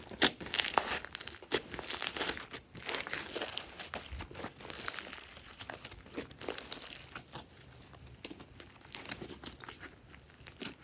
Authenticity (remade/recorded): recorded